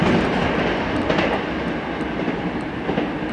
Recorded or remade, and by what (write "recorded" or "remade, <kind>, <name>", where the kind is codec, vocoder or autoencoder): recorded